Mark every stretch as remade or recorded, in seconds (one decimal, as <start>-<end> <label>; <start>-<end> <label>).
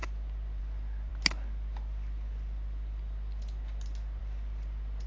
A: 0.0-5.1 recorded